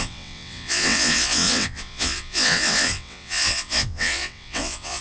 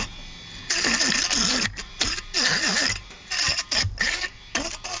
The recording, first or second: second